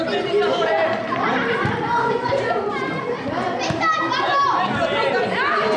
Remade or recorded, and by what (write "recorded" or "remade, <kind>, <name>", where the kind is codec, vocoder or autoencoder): remade, vocoder, BigVGAN v2